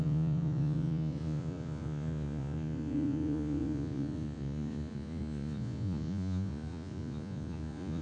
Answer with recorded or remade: remade